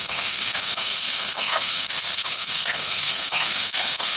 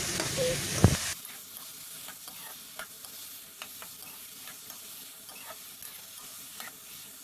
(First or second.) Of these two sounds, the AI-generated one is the first